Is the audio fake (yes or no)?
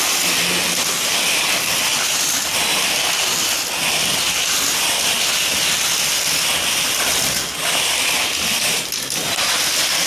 no